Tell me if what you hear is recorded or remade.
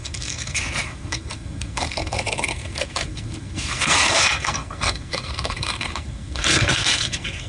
remade